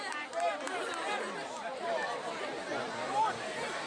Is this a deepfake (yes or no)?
no